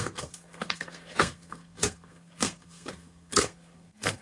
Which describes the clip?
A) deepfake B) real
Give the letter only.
A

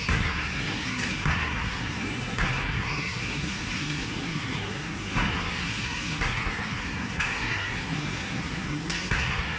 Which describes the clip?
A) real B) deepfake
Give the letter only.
B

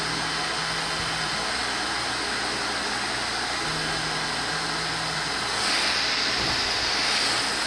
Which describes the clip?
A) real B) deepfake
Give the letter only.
A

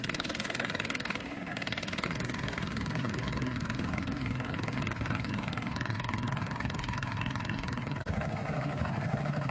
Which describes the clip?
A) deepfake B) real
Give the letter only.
A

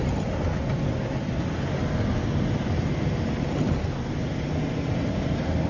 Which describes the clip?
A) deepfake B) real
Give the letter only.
B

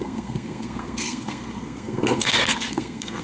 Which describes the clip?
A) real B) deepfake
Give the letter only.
B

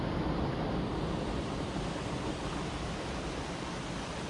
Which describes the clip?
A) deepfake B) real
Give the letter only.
B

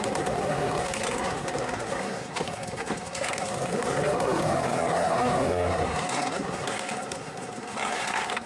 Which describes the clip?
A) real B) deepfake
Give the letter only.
B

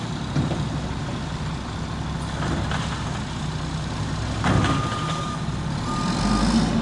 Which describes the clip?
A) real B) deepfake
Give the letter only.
A